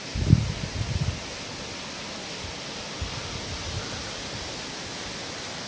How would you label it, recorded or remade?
recorded